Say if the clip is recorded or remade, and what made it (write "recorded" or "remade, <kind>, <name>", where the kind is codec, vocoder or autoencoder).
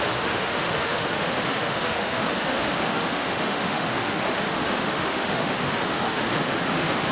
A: remade, autoencoder, DAC-VAE